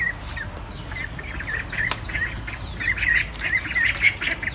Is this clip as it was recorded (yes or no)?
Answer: yes